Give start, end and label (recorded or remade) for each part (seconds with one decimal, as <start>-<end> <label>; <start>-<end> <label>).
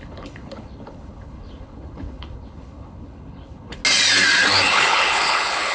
0.0-3.8 remade; 3.8-4.7 recorded; 4.7-5.7 remade